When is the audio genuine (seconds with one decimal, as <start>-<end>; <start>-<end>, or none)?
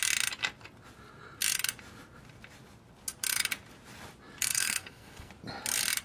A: 0.0-4.4; 5.3-6.0